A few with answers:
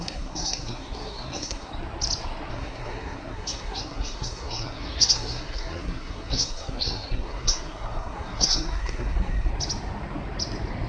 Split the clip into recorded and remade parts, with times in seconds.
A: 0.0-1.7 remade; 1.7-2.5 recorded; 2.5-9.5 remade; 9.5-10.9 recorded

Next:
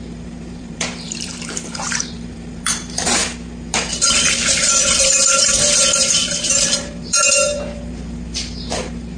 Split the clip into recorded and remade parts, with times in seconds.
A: 0.0-3.2 remade; 3.2-3.9 recorded; 3.9-9.2 remade

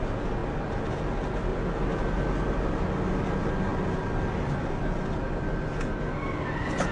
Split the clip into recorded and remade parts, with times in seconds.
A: 0.0-1.5 recorded; 1.5-2.2 remade; 2.2-6.9 recorded

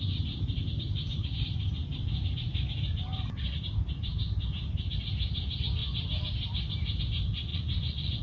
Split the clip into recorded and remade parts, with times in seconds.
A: 0.0-7.5 recorded; 7.5-8.2 remade

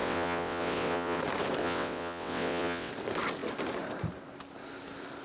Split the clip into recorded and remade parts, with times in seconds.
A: 0.0-1.2 remade; 1.2-1.6 recorded; 1.6-2.9 remade; 2.9-5.2 recorded

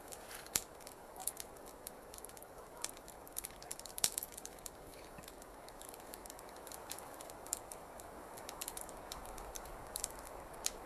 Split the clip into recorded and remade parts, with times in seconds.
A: 0.0-10.9 remade